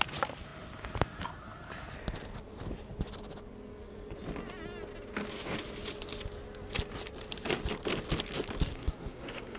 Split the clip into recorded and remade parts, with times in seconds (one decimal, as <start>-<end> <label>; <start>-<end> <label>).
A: 0.0-8.7 recorded; 8.7-9.6 remade